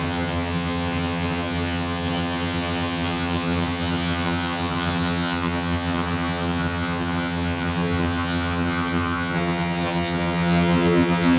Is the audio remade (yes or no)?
yes